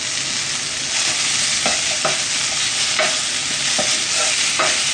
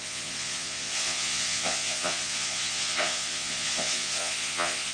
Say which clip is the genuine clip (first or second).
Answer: first